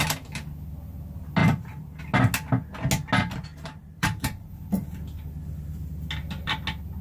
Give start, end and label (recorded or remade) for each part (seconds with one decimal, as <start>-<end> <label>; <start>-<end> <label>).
0.0-1.4 recorded; 1.4-2.0 remade; 2.0-3.5 recorded; 3.5-4.5 remade; 4.5-7.0 recorded